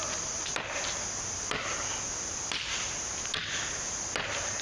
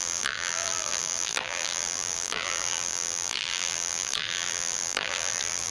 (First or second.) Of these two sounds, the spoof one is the second